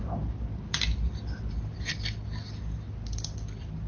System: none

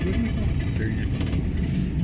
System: none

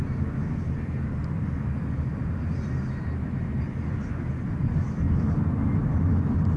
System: none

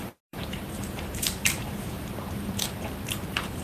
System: vocoder, BigVGAN v2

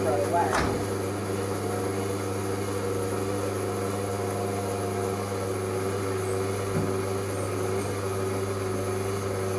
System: none